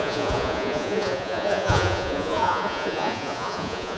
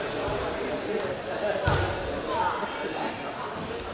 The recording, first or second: second